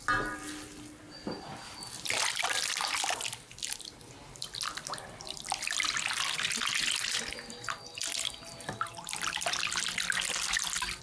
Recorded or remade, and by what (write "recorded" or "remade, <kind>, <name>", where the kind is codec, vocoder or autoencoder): recorded